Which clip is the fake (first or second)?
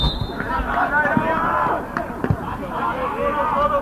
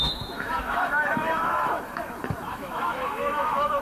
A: second